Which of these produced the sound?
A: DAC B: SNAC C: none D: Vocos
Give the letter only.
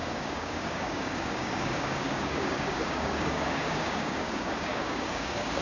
A